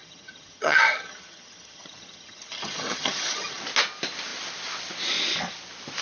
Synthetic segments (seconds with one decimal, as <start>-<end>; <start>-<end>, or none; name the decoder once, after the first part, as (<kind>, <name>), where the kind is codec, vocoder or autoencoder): 0.0-3.6 (vocoder, HiFi-GAN)